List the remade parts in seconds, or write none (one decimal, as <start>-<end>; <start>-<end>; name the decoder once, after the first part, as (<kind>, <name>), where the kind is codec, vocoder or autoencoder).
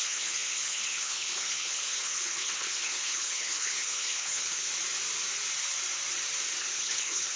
0.0-4.7 (codec, HILCodec); 6.6-7.4